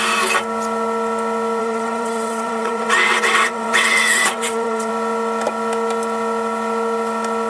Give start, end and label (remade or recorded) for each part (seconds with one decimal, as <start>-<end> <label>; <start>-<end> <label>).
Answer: 0.0-1.6 recorded; 1.6-4.9 remade; 4.9-7.5 recorded